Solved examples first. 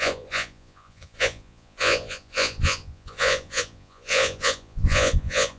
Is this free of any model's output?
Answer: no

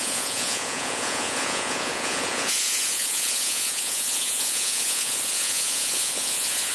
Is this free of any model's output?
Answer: no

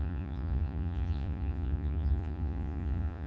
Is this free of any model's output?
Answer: no